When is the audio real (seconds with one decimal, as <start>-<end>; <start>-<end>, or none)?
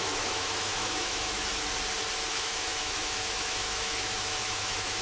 1.5-2.3